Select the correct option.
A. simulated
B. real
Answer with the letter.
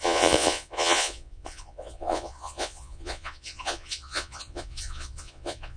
A